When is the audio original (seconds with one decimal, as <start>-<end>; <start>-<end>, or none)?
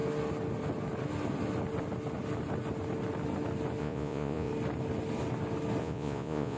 0.0-3.8; 4.5-5.8